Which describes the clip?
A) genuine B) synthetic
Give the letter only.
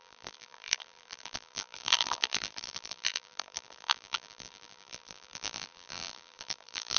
B